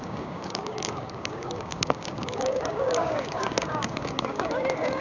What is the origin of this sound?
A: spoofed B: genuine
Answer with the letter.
A